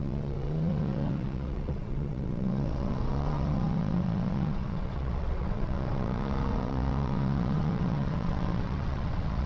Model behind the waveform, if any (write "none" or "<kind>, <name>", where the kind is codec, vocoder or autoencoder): vocoder, WaveNeXt